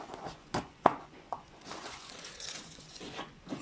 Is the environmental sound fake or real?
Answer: fake